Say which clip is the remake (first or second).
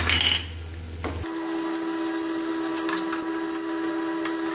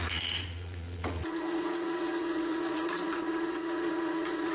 second